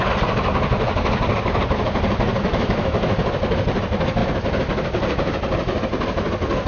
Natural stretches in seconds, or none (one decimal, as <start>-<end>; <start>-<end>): 0.0-2.5; 3.2-6.7